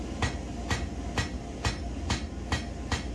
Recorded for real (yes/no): yes